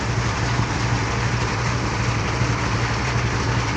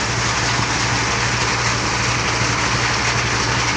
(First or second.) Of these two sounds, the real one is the second